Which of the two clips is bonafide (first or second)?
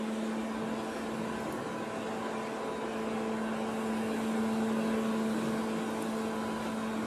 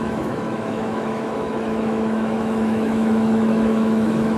first